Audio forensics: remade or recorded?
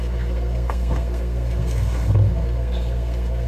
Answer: remade